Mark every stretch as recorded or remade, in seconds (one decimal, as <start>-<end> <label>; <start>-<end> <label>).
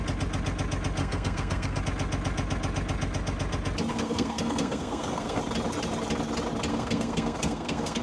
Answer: 0.0-1.0 recorded; 1.0-1.8 remade; 1.8-3.9 recorded; 3.9-5.4 remade; 5.4-6.7 recorded; 6.7-8.0 remade